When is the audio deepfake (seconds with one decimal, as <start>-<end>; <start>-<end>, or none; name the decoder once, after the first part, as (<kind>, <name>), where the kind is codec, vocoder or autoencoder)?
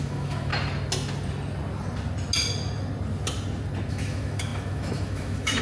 0.0-0.5 (autoencoder, DAC-VAE); 3.9-5.6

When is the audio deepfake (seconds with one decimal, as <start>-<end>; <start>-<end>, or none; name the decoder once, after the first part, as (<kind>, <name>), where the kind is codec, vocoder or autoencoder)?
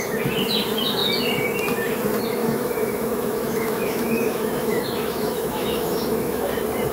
2.4-6.5 (autoencoder, DAC-VAE)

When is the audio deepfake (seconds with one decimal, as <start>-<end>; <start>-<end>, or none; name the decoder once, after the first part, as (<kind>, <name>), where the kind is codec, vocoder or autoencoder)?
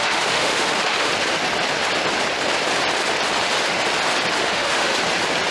0.0-1.1 (autoencoder, DAC-VAE); 4.4-4.9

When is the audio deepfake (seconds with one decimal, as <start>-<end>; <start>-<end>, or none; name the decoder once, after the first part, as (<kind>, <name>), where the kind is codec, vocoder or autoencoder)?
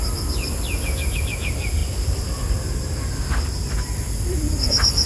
none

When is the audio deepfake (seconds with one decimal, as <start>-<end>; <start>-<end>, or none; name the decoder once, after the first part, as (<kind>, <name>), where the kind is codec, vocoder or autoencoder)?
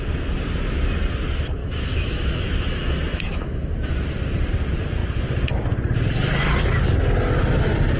1.6-3.9 (autoencoder, DAC-VAE)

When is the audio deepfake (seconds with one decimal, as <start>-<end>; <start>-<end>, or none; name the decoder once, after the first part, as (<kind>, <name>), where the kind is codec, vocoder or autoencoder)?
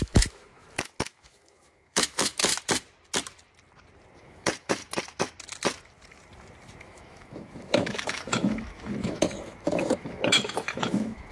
0.0-2.5 (autoencoder, DAC-VAE); 4.2-4.8; 6.8-11.3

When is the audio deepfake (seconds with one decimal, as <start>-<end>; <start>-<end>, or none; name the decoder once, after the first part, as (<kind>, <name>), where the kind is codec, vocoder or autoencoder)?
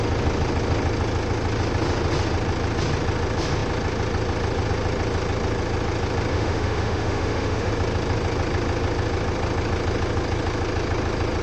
6.3-7.7 (autoencoder, DAC-VAE)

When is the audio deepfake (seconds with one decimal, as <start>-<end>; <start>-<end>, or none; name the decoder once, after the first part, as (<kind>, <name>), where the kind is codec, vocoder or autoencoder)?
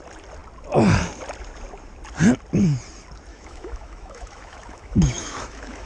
3.3-5.9 (autoencoder, DAC-VAE)